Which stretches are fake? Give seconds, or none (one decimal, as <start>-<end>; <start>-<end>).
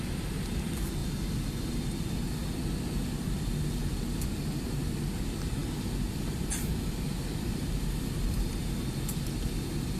none